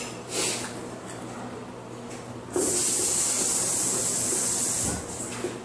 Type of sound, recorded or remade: recorded